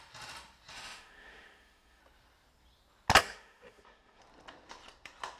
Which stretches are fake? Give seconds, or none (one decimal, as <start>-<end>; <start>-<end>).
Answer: 0.7-2.0; 3.2-4.2